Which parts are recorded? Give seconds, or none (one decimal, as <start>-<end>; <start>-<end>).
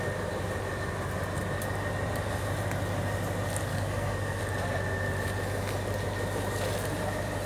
0.0-3.7; 4.4-7.5